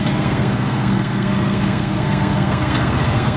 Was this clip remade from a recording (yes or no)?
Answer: yes